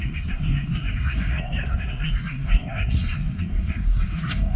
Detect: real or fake fake